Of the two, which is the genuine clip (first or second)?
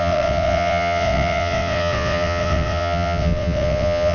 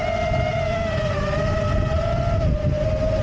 second